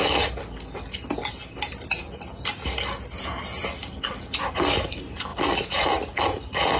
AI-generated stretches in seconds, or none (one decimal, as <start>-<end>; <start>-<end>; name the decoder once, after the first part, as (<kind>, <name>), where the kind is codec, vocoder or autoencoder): none

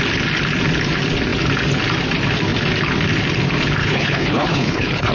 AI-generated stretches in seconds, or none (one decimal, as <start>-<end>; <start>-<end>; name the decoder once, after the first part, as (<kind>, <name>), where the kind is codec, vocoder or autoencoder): 3.8-5.1 (codec, HILCodec)

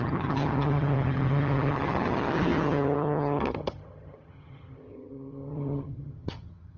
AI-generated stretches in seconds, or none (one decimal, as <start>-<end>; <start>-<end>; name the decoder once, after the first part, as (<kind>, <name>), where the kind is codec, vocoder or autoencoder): 0.0-6.8 (vocoder, HiFi-GAN)

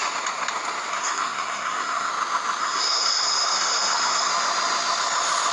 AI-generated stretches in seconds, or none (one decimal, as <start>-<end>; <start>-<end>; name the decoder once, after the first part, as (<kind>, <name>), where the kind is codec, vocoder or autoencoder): 0.9-2.1 (codec, SNAC); 2.6-4.3

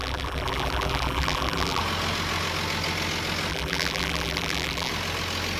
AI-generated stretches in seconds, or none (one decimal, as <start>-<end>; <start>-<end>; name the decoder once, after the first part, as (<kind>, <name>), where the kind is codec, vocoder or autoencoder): 0.0-1.8 (vocoder, BigVGAN v2); 3.5-4.9